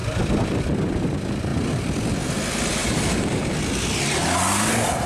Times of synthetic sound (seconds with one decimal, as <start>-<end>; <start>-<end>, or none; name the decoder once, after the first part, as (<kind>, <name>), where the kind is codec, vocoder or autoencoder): 2.8-3.5 (vocoder, BigVGAN v2)